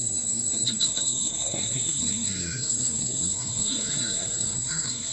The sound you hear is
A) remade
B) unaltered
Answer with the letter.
A